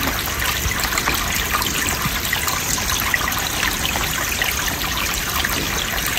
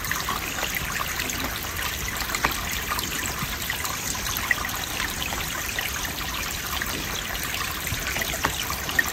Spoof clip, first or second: second